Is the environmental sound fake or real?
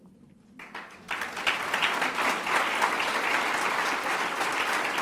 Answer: real